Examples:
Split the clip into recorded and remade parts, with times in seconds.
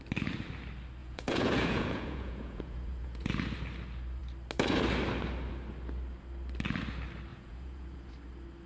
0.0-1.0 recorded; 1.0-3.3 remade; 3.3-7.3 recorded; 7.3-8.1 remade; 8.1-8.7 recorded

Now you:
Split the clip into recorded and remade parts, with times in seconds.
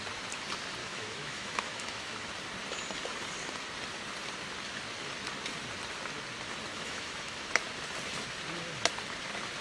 0.0-0.8 recorded; 0.8-2.3 remade; 2.3-6.7 recorded; 6.7-7.5 remade; 7.5-9.6 recorded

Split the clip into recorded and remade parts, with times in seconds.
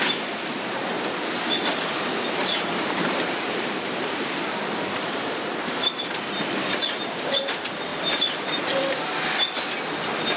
0.0-2.4 recorded; 2.4-6.8 remade; 6.8-7.9 recorded; 7.9-8.5 remade; 8.5-10.4 recorded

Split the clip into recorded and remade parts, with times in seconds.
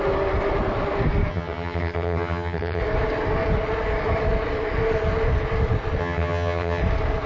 0.0-1.3 recorded; 1.3-2.8 remade; 2.8-6.0 recorded; 6.0-6.8 remade; 6.8-7.3 recorded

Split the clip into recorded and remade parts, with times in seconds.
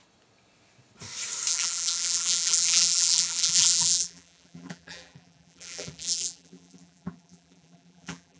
0.0-1.5 recorded; 1.5-8.4 remade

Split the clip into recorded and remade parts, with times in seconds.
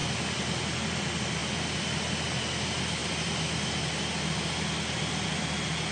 0.0-5.9 recorded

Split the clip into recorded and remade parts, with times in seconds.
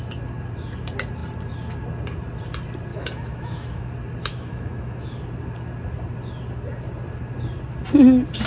0.0-2.9 recorded; 2.9-3.9 remade; 3.9-4.3 recorded; 4.3-5.2 remade; 5.2-8.5 recorded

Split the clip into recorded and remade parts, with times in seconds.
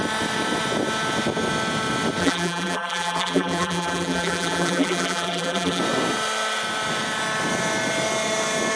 0.0-2.2 recorded; 2.2-5.8 remade; 5.8-8.8 recorded